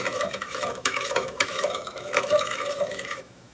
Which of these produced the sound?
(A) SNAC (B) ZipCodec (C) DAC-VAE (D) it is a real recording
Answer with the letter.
C